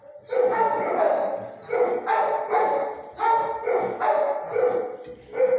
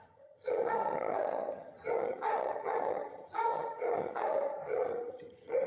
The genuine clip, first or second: first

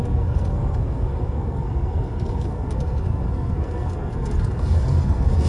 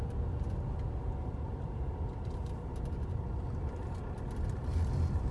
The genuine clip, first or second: second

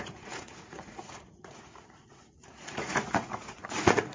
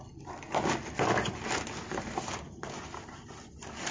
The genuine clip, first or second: second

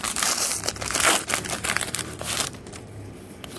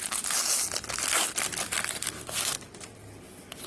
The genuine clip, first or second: second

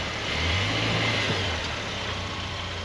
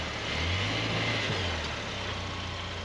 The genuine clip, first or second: second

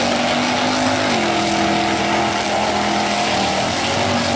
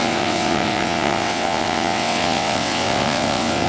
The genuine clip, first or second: first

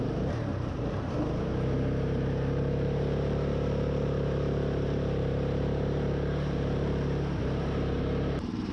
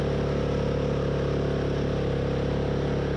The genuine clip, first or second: second